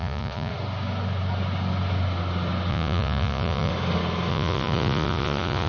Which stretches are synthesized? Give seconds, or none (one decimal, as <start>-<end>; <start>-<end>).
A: 0.0-0.5; 2.7-3.7; 4.3-5.7